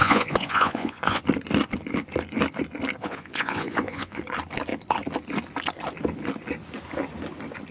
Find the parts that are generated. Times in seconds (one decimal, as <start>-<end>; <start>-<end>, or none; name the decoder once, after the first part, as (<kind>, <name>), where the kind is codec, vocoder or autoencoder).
0.0-1.2 (vocoder, Vocos); 3.0-4.2